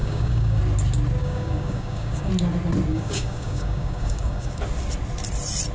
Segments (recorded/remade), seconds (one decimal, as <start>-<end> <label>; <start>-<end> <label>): 0.0-0.6 remade; 0.6-1.2 recorded; 1.2-2.3 remade; 2.3-2.9 recorded; 2.9-4.6 remade; 4.6-5.7 recorded